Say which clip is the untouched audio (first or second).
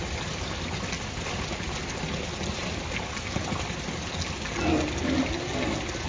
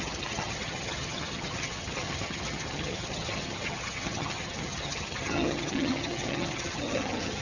first